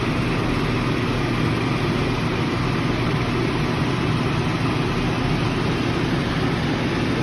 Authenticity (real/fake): real